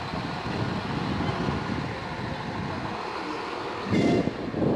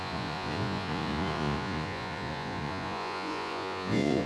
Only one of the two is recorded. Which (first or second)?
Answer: first